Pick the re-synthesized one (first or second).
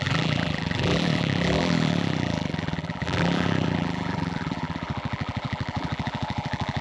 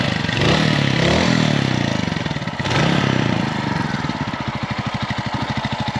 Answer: first